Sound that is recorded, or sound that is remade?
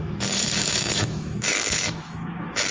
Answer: remade